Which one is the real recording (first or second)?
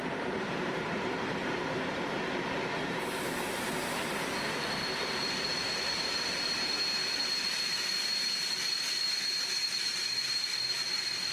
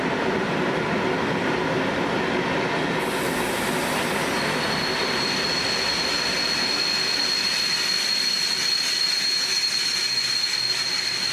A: second